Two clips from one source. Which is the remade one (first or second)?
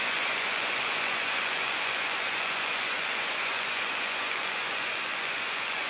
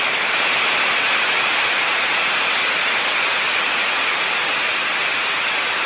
first